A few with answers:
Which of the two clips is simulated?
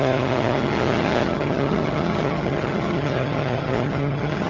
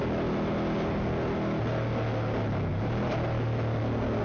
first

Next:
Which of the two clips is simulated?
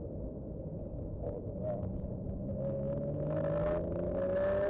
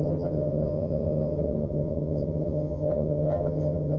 second